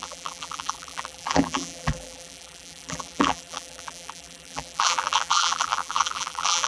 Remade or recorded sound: remade